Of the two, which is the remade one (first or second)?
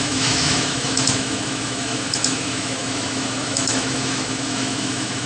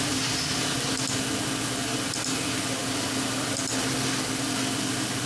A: first